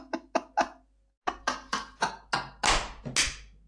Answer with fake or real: real